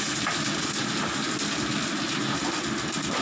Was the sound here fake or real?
real